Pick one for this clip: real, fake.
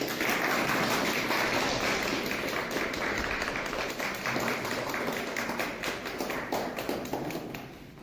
real